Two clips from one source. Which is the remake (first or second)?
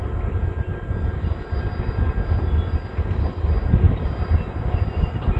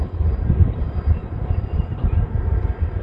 second